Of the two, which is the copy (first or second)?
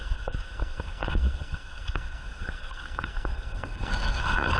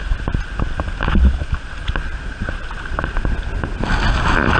first